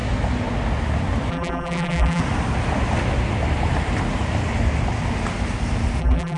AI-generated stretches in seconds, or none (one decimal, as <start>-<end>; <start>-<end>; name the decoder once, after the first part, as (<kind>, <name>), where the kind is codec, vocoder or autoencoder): 1.3-2.2 (vocoder, BigVGAN v2); 6.0-6.4